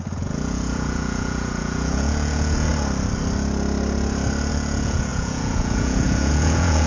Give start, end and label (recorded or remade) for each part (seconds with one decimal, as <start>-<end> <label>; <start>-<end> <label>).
0.0-2.7 remade; 2.7-4.5 recorded; 4.5-6.9 remade